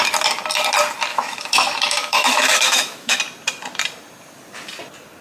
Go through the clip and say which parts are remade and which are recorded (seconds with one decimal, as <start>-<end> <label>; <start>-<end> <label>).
0.0-1.1 recorded; 1.1-3.2 remade; 3.2-5.2 recorded